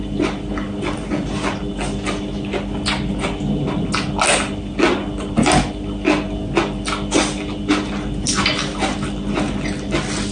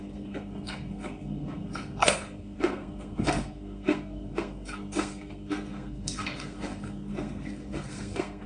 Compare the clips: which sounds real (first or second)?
first